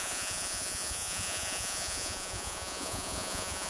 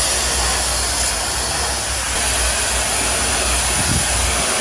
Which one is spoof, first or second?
first